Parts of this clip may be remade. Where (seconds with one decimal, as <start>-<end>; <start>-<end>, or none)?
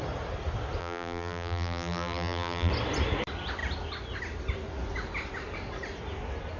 0.8-2.7